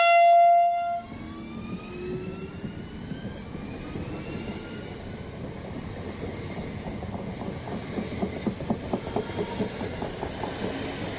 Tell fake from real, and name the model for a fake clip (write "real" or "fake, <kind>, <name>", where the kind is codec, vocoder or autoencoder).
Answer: real